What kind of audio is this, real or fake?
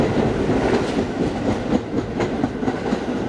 real